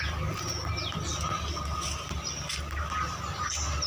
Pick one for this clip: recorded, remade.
recorded